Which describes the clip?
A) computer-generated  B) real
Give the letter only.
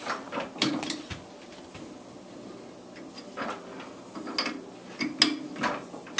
B